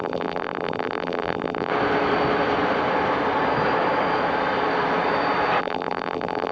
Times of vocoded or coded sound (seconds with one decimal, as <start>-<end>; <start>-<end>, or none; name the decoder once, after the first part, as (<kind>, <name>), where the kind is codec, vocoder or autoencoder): 0.0-1.7 (vocoder, BigVGAN v2); 5.6-6.5